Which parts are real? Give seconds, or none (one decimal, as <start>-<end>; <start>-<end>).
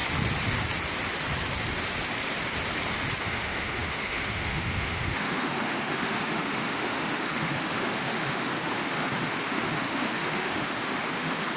0.0-3.2